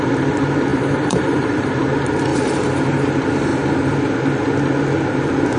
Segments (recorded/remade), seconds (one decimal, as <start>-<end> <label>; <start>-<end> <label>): 0.0-0.7 recorded; 0.7-1.7 remade; 1.7-2.3 recorded; 2.3-3.1 remade; 3.1-5.6 recorded